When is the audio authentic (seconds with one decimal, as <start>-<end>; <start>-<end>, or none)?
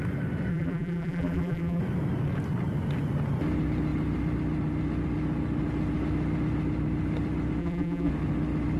0.0-0.5; 1.8-7.6; 8.1-8.8